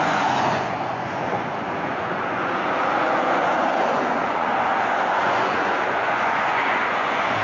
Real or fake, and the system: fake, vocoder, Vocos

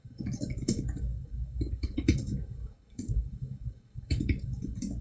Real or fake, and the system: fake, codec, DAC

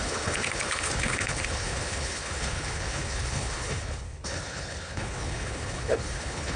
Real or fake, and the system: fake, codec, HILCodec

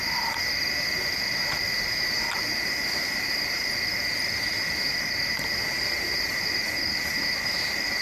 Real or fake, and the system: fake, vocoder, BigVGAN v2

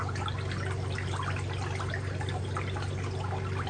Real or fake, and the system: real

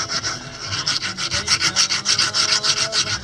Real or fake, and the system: real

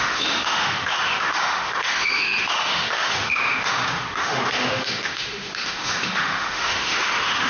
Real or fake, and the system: fake, autoencoder, DAC-VAE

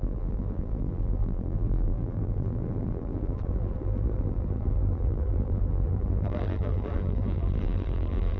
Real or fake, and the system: fake, vocoder, BigVGAN v2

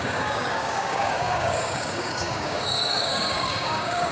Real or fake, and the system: fake, codec, DAC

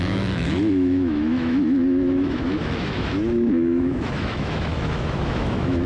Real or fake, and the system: fake, autoencoder, DAC-VAE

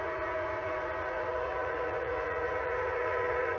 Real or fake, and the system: fake, vocoder, Vocos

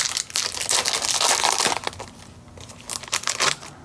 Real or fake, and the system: real